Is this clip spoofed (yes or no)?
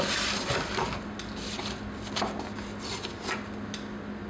no